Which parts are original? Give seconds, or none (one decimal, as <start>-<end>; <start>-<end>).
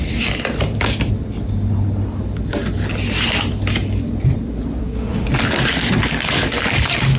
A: 0.0-4.8; 5.3-7.2